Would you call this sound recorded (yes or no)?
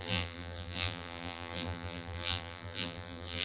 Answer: no